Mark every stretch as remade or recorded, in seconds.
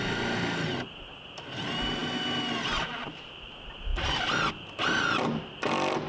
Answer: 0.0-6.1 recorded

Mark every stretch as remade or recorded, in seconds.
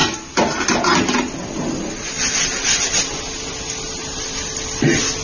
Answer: 0.0-5.2 recorded